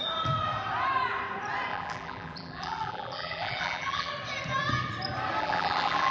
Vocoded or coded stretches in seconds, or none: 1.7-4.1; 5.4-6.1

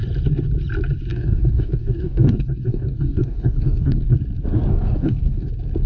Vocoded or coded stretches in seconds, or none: 1.1-4.2; 4.7-5.5

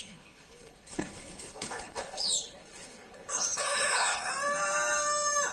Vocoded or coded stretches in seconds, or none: 0.0-4.3

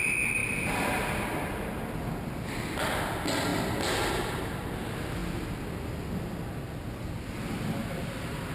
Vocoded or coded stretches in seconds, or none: none

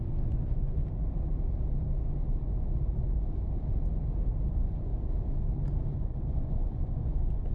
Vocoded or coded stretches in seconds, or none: 0.0-0.8; 4.5-4.9; 5.9-7.5